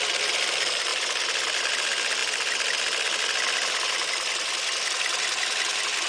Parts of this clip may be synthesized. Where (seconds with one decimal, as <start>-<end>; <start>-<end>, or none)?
none